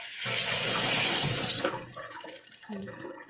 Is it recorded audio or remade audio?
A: remade